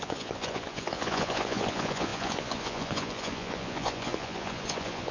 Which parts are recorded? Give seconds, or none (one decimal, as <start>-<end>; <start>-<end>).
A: none